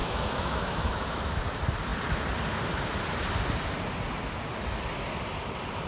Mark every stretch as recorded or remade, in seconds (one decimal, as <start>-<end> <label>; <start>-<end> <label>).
0.0-1.4 remade; 1.4-5.9 recorded